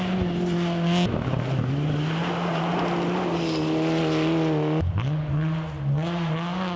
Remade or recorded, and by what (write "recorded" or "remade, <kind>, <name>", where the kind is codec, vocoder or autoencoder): recorded